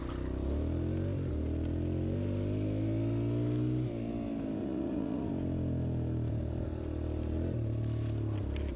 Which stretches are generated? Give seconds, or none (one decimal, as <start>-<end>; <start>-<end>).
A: 4.6-5.3

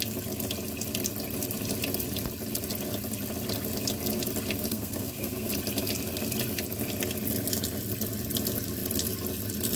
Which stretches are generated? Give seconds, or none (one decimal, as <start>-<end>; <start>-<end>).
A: 4.7-5.5

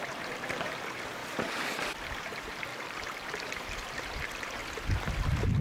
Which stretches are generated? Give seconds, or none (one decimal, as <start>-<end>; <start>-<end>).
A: 0.0-1.2; 2.1-4.6

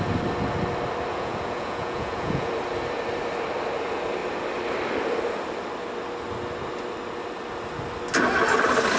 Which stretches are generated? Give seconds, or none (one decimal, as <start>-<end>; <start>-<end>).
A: 1.1-2.5

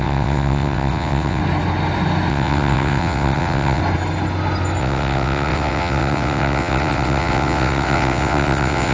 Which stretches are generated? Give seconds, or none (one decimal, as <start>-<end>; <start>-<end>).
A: 0.0-1.4; 2.3-3.8; 4.8-8.9

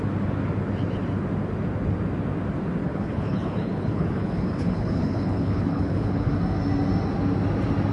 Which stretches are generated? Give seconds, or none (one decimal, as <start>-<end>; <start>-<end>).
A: 2.8-6.3